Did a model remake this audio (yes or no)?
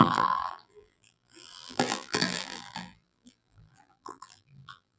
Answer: yes